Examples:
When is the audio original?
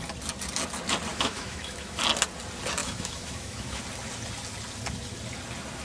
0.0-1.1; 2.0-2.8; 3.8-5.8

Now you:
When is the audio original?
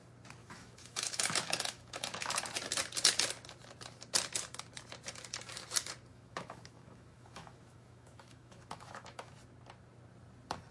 0.0-0.4; 2.4-6.1; 9.3-10.7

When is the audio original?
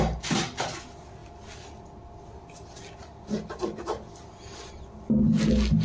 0.0-5.8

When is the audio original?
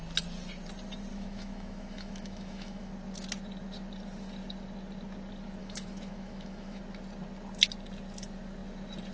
0.0-1.1; 2.9-5.6; 6.8-9.1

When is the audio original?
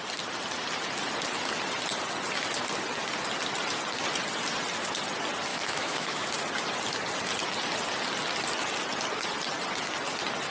0.0-5.5; 6.3-10.5